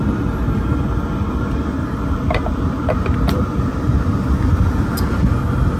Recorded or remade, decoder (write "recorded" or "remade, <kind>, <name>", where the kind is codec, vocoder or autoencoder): recorded